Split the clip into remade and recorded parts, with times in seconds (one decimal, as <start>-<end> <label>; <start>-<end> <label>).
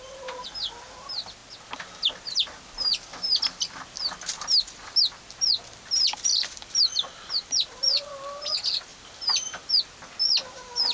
0.0-6.3 recorded; 6.3-8.1 remade; 8.1-8.9 recorded; 8.9-9.8 remade; 9.8-10.9 recorded